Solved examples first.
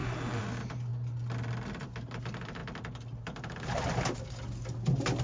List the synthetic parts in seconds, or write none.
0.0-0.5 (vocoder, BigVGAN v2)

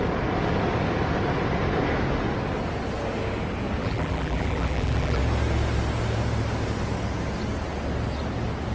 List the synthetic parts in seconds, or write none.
3.8-5.2 (vocoder, BigVGAN v2)

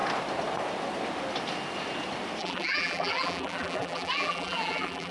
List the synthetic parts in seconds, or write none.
2.4-5.1 (vocoder, BigVGAN v2)

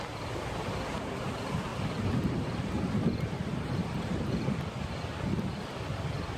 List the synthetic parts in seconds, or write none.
1.7-5.5 (vocoder, BigVGAN v2)